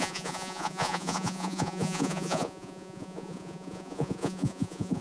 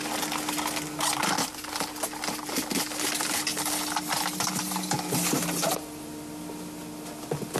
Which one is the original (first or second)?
second